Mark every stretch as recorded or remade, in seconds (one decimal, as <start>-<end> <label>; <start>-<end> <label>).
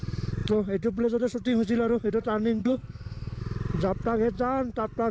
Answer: 0.0-2.6 recorded; 2.6-3.4 remade; 3.4-5.1 recorded